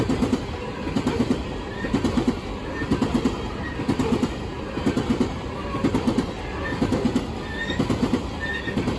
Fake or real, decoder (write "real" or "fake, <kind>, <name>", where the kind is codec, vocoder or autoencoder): real